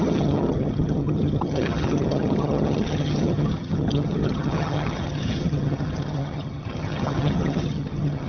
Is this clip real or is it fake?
fake